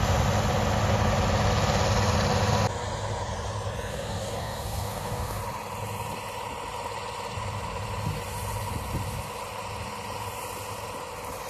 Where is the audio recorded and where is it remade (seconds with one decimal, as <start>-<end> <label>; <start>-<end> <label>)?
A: 0.0-3.9 recorded; 3.9-5.4 remade; 5.4-11.5 recorded